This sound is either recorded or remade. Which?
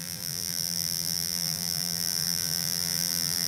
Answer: remade